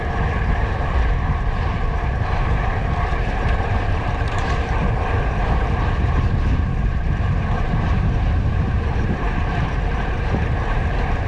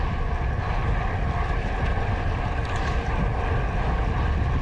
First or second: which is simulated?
first